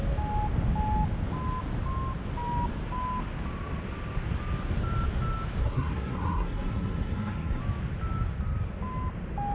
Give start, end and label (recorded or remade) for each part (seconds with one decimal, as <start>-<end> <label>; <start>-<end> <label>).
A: 0.0-5.6 recorded; 5.6-7.6 remade; 7.6-9.5 recorded